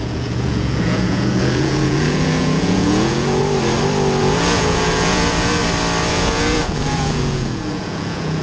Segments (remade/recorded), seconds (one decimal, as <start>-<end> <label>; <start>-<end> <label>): 0.0-3.4 remade; 3.4-4.2 recorded; 4.2-5.6 remade; 5.6-6.1 recorded; 6.1-8.4 remade